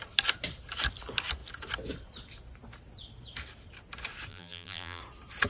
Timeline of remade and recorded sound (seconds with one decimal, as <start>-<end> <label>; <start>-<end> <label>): 0.0-4.3 recorded; 4.3-5.0 remade; 5.0-5.5 recorded